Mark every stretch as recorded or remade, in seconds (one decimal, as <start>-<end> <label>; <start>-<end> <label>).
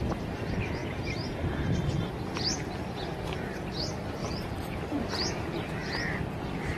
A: 0.0-0.8 remade; 0.8-3.8 recorded; 3.8-6.8 remade